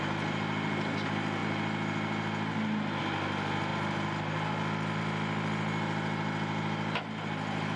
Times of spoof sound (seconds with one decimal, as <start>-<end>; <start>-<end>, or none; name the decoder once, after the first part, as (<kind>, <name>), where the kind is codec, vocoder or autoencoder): none